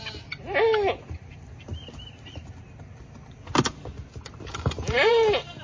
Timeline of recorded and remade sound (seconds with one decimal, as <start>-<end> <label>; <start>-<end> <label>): 0.0-5.6 recorded